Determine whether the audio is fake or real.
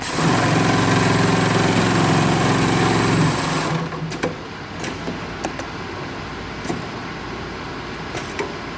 real